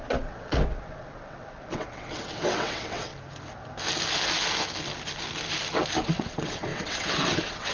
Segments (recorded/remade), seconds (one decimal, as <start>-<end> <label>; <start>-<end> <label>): 0.0-3.1 remade; 3.1-6.0 recorded; 6.0-7.7 remade